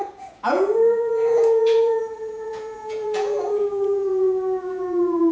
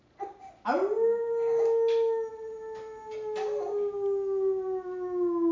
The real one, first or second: second